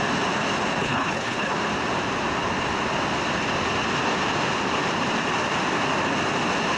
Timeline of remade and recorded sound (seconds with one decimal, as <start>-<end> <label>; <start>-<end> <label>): 0.0-0.8 recorded; 0.8-1.5 remade; 1.5-6.8 recorded